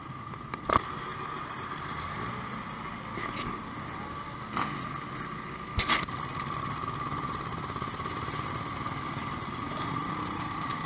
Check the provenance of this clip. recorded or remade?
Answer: recorded